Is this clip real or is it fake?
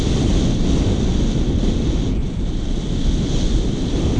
real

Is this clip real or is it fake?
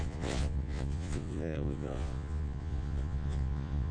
fake